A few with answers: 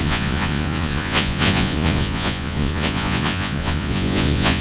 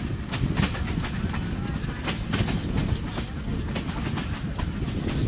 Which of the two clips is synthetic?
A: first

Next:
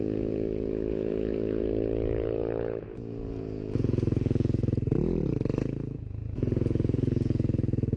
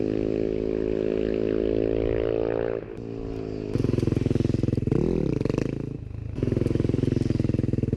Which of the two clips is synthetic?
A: first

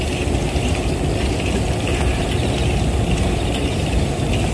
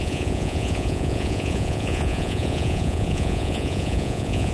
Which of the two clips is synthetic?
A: second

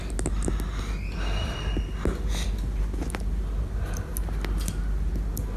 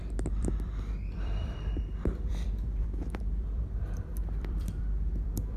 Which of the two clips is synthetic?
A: second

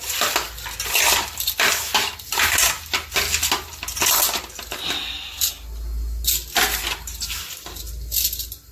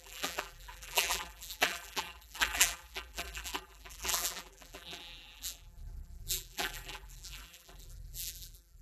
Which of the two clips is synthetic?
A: second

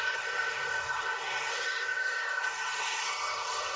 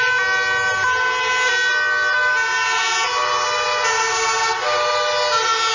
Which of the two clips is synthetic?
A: first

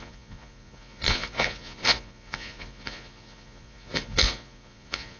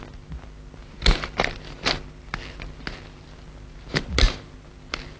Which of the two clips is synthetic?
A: first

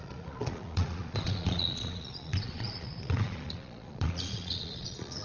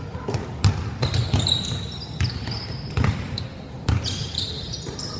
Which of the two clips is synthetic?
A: first